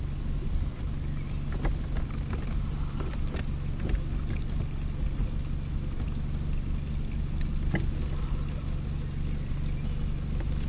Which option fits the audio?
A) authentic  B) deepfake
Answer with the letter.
A